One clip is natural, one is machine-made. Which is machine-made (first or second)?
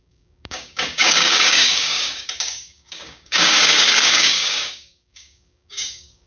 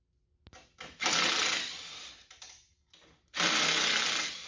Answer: first